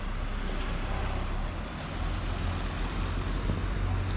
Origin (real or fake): real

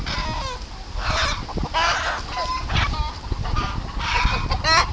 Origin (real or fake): real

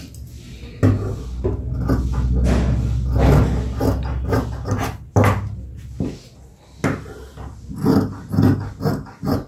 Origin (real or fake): real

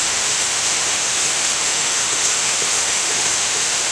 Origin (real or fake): fake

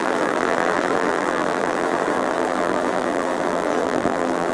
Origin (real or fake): fake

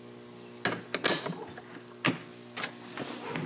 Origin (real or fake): real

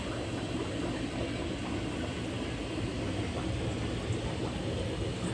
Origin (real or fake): real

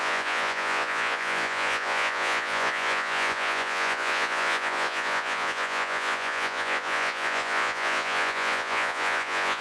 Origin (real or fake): fake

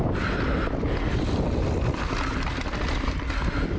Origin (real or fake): real